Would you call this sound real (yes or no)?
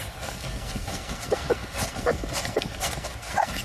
no